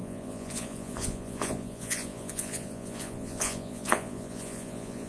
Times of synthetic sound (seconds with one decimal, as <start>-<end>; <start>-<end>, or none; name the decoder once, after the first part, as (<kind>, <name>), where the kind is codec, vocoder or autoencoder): 0.0-5.1 (vocoder, Vocos)